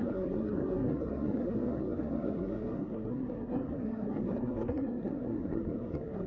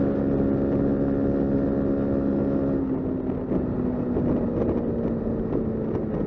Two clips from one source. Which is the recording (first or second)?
second